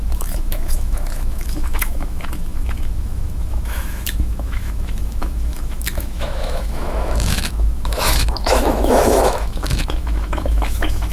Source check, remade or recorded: remade